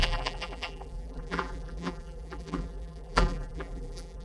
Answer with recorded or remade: remade